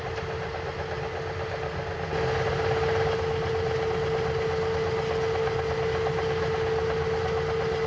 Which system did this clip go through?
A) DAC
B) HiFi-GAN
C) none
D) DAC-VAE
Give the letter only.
C